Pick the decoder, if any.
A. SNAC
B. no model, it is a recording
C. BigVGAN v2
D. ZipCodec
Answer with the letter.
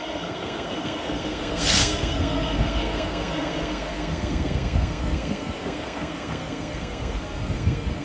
A